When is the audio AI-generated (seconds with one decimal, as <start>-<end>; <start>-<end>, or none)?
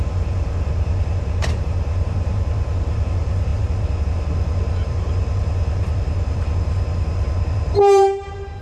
0.0-8.6